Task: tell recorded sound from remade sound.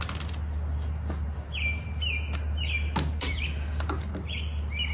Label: recorded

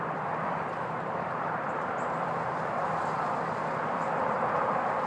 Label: remade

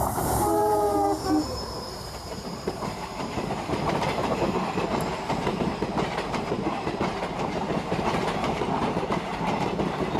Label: remade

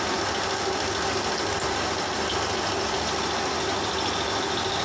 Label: recorded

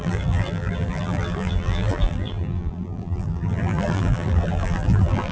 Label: remade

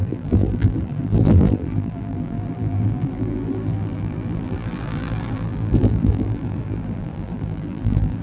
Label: remade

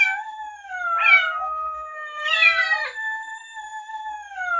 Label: remade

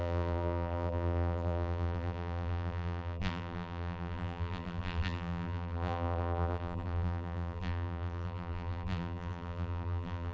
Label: remade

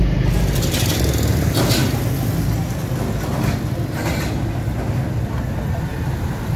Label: recorded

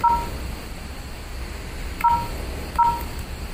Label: recorded